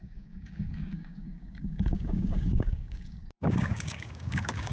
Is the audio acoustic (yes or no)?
no